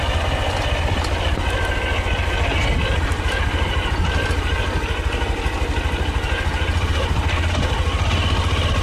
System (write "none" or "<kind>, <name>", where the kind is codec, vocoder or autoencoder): none